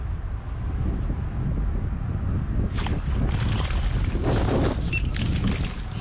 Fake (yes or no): no